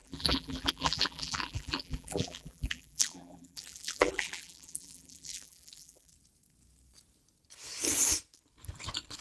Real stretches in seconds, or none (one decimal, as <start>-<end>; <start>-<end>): 6.1-9.2

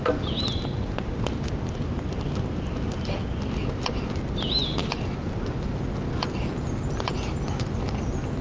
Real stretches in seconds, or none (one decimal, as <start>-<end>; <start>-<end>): 0.0-8.4

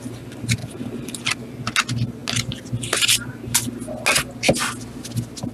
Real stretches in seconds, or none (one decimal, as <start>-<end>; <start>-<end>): 0.0-0.6; 1.1-5.5

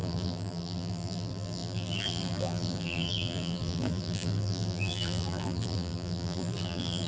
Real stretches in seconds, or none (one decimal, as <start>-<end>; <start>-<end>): none

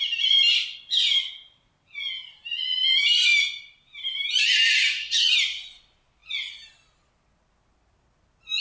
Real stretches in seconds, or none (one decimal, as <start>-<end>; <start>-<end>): 0.0-3.3; 4.0-6.2; 6.7-8.6